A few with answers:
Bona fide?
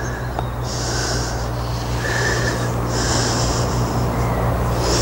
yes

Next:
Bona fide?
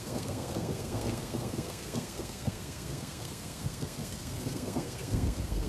no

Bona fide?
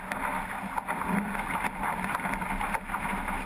yes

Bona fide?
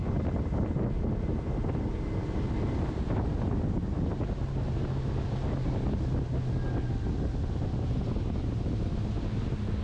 yes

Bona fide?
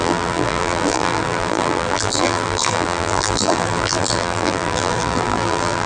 no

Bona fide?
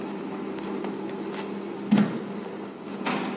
yes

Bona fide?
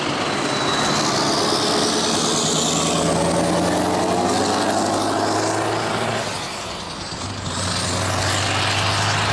yes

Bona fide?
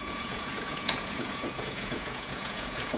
no